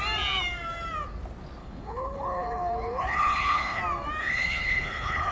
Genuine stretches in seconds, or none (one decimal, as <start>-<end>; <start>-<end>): 0.0-1.6; 3.8-4.2